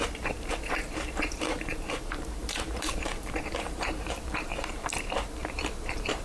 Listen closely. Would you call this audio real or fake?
fake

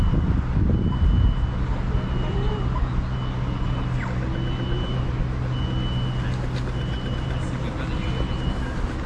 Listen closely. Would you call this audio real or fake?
real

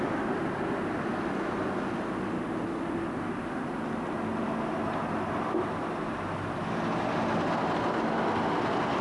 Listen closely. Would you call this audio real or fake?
real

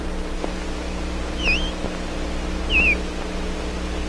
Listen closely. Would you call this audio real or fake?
real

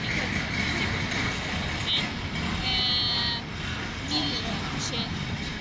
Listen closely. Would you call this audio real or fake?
real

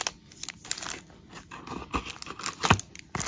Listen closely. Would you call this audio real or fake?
real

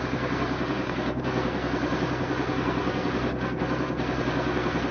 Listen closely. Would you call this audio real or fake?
fake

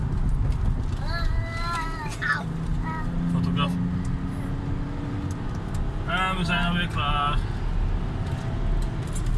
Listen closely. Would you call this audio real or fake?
real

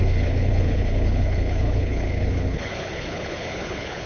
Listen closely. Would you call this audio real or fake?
fake